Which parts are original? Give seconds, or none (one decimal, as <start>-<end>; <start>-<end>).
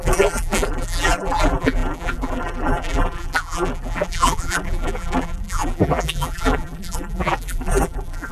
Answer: none